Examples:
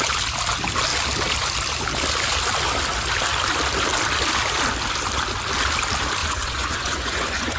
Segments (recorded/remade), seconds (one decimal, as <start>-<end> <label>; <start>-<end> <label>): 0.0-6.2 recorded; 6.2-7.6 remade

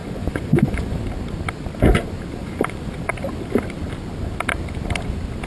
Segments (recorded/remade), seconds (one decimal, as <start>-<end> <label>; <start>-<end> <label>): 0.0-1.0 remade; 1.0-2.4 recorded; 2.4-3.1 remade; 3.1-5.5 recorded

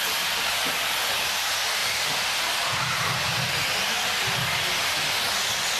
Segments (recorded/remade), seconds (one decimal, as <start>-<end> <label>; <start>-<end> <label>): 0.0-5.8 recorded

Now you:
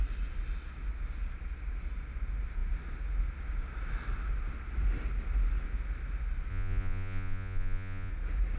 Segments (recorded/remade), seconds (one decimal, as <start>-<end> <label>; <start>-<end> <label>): 0.0-6.5 recorded; 6.5-8.1 remade; 8.1-8.6 recorded

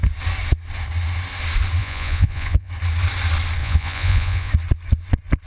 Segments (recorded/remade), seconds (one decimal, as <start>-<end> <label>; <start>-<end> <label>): 0.0-1.8 recorded; 1.8-2.7 remade; 2.7-3.6 recorded; 3.6-4.5 remade; 4.5-5.5 recorded